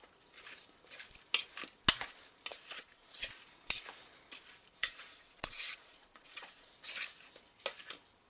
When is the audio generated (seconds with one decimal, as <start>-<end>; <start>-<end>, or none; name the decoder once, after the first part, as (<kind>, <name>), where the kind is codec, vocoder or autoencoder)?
2.5-3.2 (vocoder, Vocos); 4.8-6.7